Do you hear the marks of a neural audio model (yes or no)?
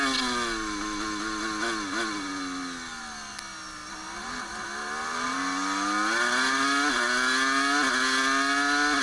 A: no